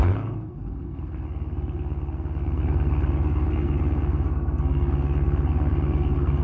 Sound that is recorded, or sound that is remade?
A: remade